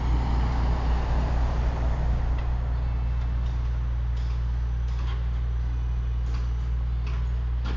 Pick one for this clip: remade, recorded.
recorded